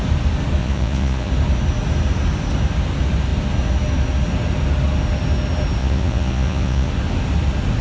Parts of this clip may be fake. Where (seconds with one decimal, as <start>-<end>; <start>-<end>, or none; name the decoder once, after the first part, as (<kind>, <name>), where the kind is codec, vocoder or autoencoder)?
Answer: 0.6-1.3 (vocoder, Vocos); 5.8-6.9